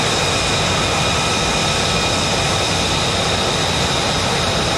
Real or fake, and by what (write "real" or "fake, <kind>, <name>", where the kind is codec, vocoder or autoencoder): real